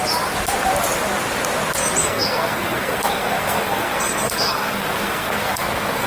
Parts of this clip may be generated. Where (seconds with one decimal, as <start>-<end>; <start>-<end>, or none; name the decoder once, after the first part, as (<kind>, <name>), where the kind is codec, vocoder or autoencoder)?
2.0-6.1 (codec, SNAC)